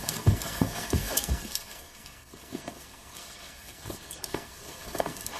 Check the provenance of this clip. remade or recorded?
remade